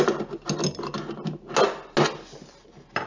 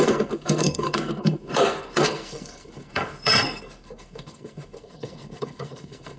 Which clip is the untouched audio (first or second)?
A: first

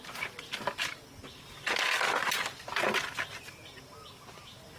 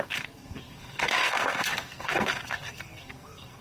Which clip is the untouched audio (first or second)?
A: first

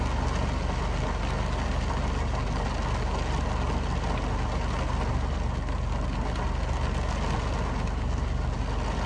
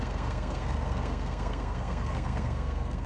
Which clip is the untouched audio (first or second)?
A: first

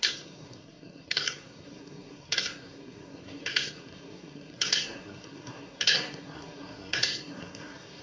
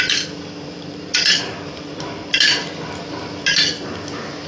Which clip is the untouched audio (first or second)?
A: second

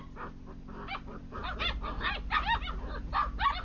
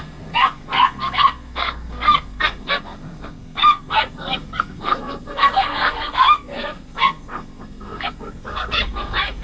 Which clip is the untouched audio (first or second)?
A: first